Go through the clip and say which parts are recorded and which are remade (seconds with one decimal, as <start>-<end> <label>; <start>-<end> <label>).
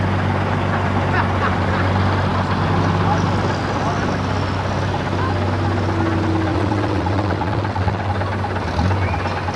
0.0-6.5 recorded; 6.5-8.1 remade; 8.1-9.6 recorded